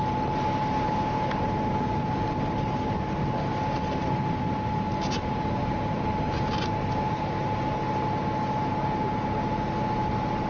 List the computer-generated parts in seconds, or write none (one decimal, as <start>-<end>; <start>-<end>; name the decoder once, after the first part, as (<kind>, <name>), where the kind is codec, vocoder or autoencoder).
none